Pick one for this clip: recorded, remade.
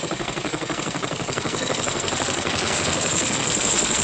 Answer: remade